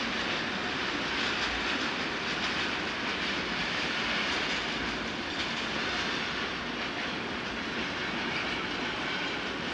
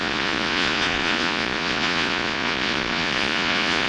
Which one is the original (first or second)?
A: first